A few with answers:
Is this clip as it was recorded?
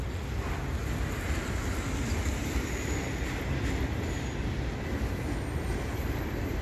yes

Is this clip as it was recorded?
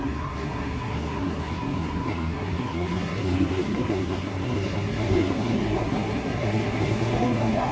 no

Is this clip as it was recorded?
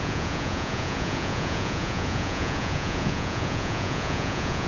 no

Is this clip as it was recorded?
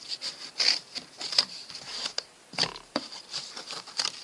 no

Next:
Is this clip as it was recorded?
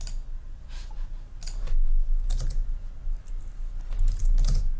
yes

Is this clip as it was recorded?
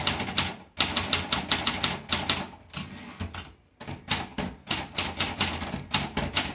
yes